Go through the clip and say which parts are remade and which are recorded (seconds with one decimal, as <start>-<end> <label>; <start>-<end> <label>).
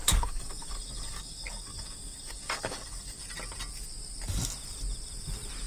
0.0-3.2 remade; 3.2-5.7 recorded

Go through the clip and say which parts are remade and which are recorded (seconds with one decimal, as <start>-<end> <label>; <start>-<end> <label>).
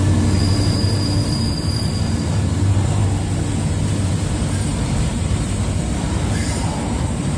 0.0-3.0 remade; 3.0-3.7 recorded; 3.7-7.4 remade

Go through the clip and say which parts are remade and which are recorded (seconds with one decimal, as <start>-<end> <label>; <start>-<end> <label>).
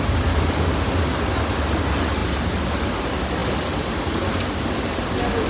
0.0-5.5 recorded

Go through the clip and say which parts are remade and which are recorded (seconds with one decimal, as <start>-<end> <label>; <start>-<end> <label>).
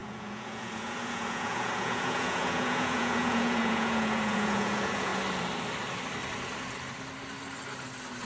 0.0-5.1 remade; 5.1-8.2 recorded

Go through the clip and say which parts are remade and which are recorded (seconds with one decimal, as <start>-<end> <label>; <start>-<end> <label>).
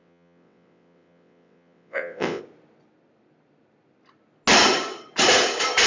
0.0-2.4 remade; 2.4-5.9 recorded